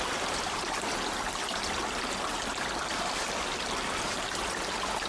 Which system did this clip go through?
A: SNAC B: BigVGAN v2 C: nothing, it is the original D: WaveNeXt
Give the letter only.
C